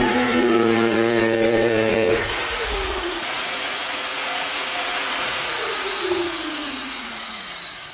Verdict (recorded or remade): remade